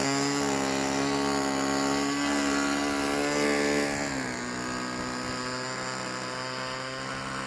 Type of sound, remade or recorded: recorded